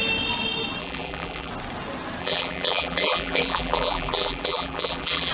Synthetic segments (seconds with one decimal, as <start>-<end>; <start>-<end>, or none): 0.8-1.5; 2.2-5.3